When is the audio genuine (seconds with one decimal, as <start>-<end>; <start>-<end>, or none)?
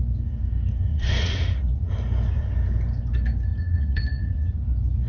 0.0-0.9; 1.9-3.5; 4.6-5.1